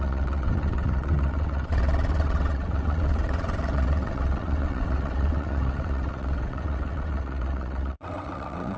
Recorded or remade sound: remade